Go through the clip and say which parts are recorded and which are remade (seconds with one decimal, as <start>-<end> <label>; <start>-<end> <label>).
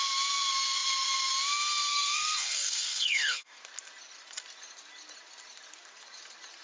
0.0-1.9 recorded; 1.9-3.6 remade; 3.6-6.6 recorded